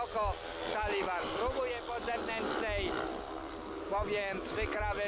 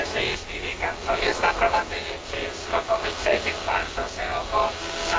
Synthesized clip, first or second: second